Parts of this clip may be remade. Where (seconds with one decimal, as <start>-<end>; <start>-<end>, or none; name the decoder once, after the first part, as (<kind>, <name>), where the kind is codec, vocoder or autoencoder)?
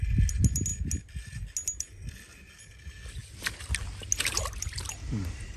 none